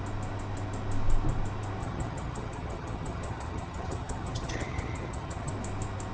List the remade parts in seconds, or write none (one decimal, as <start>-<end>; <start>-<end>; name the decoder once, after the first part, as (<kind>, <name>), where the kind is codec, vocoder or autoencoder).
1.8-5.5 (vocoder, HiFi-GAN)